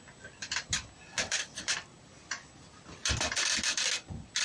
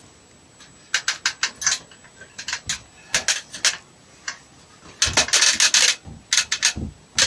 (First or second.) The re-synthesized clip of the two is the first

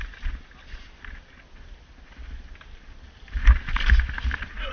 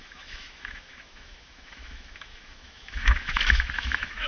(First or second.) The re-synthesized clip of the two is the second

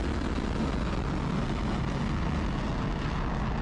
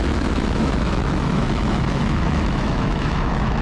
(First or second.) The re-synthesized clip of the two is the second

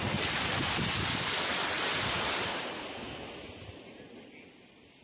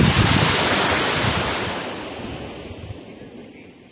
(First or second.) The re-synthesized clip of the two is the second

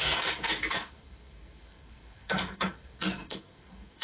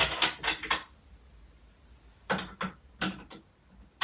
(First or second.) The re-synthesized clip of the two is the first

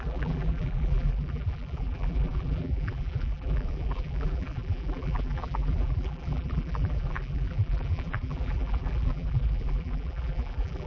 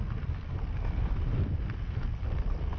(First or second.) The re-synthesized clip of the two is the first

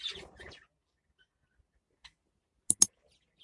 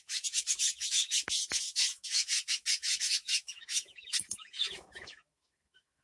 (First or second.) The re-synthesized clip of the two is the second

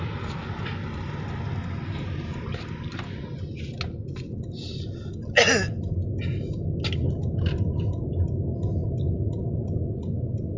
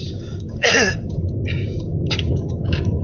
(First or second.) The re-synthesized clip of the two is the second